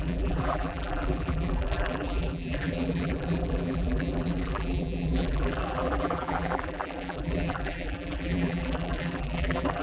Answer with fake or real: fake